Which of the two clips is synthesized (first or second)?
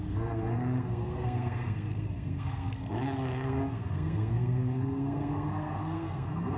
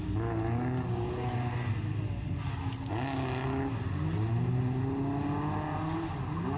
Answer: first